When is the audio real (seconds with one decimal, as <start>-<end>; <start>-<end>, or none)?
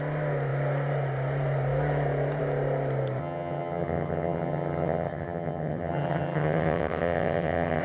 0.0-3.2